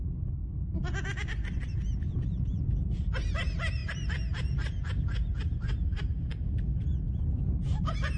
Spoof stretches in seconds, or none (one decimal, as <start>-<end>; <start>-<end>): 2.1-8.2

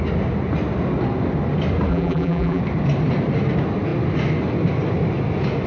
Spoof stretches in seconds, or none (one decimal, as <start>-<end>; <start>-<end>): 1.9-2.6